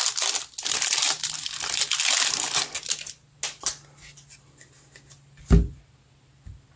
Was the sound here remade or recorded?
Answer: recorded